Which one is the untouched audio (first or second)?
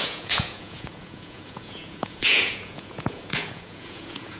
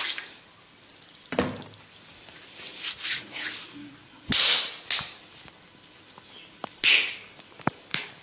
second